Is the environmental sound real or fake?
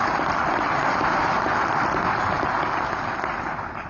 real